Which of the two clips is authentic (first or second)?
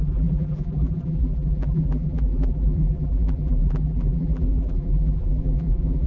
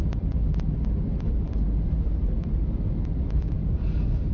second